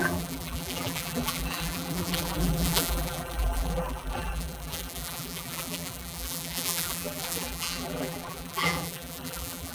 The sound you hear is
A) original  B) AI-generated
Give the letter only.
B